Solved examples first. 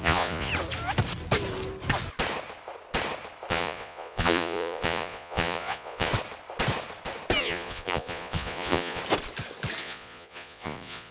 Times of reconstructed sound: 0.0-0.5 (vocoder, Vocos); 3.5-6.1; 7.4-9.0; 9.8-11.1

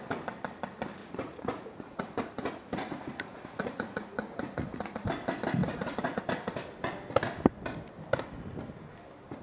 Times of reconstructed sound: 1.0-5.1 (vocoder, Vocos); 5.6-6.2

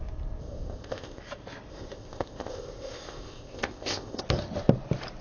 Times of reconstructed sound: 0.4-1.2 (codec, ZipCodec); 1.7-4.2

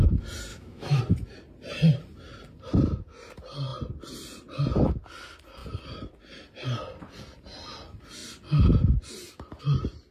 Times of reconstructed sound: 0.5-1.0 (autoencoder, DAC-VAE)

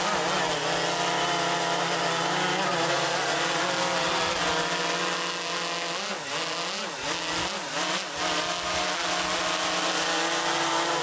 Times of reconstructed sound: none

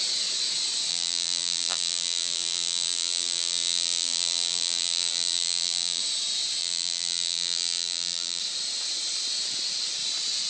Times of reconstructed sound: 0.9-6.0 (vocoder, BigVGAN v2); 6.6-8.4

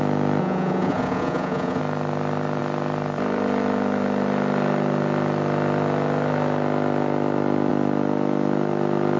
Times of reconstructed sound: 0.4-1.8 (vocoder, Vocos)